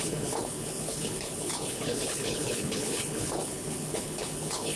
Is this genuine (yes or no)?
no